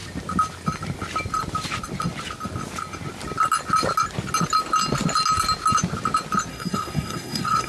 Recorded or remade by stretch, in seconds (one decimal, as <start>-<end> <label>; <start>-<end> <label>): 0.0-6.5 recorded; 6.5-7.7 remade